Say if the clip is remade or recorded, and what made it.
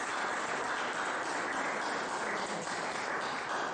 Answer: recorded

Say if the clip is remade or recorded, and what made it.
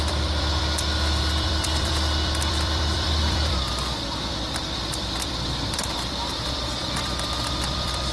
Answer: remade, vocoder, BigVGAN v2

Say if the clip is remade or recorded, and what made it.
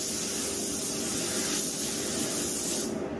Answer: recorded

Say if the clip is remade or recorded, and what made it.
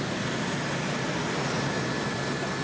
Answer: recorded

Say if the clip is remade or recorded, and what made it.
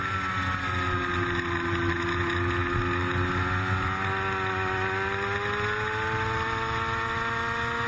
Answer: recorded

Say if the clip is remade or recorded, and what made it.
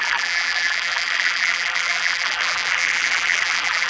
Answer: remade, vocoder, BigVGAN v2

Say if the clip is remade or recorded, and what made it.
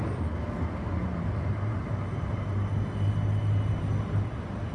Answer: recorded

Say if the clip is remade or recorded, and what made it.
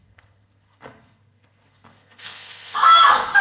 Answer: remade, codec, SNAC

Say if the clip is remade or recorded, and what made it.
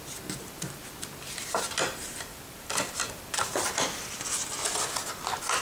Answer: recorded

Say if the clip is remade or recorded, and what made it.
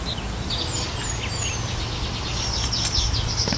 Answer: recorded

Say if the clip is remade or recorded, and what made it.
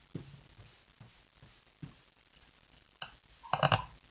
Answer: recorded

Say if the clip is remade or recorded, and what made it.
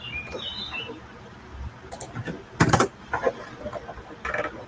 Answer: remade, vocoder, BigVGAN v2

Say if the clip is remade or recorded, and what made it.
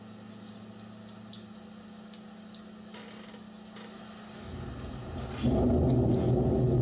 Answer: recorded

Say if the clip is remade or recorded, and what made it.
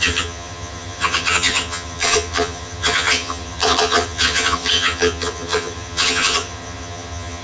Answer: remade, vocoder, HiFi-GAN